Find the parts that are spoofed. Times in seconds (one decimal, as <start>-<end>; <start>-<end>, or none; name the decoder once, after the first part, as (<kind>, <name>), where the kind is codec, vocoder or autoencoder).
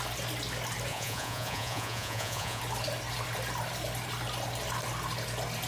0.9-2.6 (vocoder, Vocos)